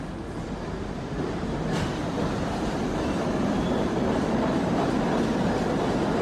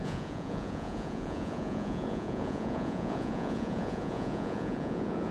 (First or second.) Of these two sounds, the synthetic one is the second